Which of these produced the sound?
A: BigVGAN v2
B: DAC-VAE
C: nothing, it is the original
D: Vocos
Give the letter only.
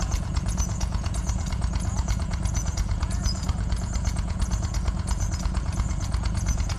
D